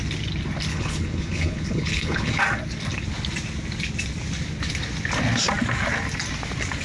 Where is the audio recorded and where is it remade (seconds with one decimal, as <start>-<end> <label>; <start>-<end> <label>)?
0.0-0.7 recorded; 0.7-2.4 remade; 2.4-6.8 recorded